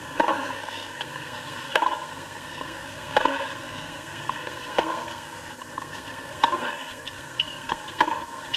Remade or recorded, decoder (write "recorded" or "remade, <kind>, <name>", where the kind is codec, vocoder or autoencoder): remade, codec, SNAC